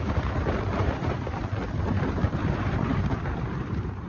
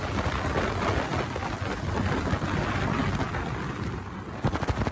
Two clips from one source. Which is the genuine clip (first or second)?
second